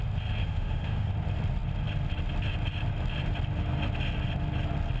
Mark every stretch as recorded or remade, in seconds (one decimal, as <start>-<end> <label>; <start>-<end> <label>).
0.0-0.4 recorded; 0.4-1.1 remade; 1.1-5.0 recorded